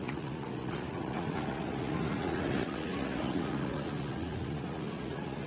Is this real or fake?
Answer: fake